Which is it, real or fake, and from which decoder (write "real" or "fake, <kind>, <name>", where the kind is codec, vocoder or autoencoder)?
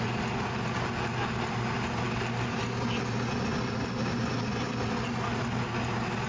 real